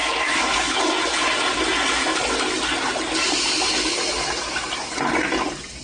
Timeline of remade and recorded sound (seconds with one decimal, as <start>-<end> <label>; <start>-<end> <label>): 0.0-0.8 remade; 0.8-5.8 recorded